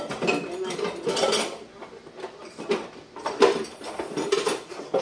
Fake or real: fake